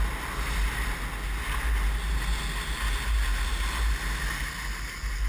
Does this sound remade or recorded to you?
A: recorded